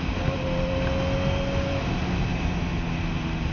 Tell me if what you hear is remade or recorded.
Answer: recorded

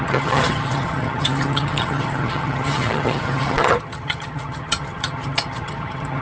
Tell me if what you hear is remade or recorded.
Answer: remade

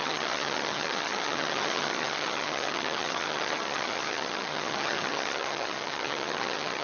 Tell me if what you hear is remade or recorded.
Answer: remade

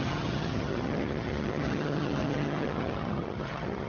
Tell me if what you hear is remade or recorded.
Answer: remade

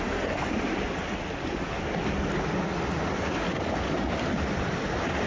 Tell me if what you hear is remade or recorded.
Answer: recorded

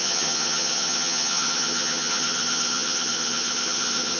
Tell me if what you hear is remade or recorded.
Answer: remade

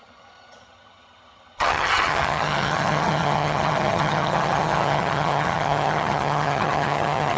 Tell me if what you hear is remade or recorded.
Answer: remade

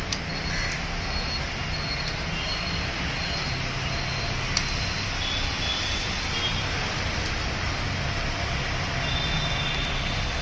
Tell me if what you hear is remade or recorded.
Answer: recorded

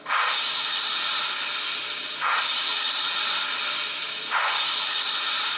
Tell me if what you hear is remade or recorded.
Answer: recorded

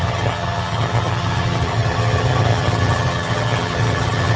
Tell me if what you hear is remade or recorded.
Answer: remade